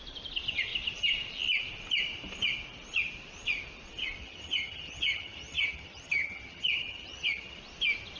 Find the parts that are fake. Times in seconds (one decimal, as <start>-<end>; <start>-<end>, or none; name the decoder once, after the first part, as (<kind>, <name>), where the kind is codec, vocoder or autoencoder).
4.2-7.6 (vocoder, HiFi-GAN)